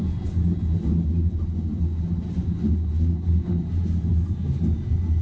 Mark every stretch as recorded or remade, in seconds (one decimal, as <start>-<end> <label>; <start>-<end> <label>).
0.0-5.2 recorded